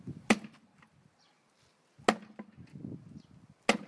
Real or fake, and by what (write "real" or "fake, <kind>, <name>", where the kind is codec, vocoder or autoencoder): real